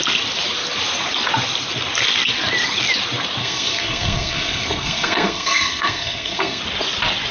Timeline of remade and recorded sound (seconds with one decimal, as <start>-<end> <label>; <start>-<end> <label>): 0.0-3.4 recorded; 3.4-6.6 remade; 6.6-7.3 recorded